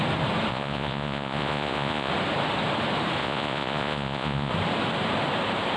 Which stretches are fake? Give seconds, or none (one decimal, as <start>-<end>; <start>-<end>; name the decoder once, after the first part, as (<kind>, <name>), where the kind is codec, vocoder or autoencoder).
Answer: 0.5-2.1 (vocoder, Vocos); 3.2-4.5